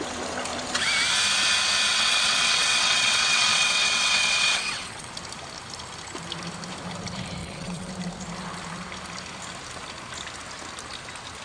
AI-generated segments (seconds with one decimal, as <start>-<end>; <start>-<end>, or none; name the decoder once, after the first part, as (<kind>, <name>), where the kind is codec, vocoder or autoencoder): 1.9-5.1 (vocoder, WaveNeXt); 7.4-7.9